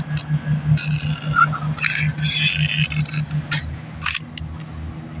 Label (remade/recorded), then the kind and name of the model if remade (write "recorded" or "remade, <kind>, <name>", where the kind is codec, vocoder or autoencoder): recorded